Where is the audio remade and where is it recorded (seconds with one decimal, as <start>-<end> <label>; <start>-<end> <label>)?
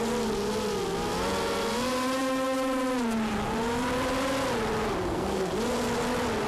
0.0-5.0 recorded; 5.0-5.5 remade; 5.5-6.5 recorded